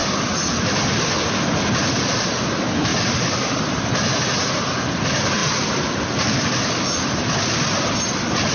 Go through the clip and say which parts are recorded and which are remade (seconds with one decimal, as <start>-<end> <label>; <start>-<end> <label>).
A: 0.0-8.5 recorded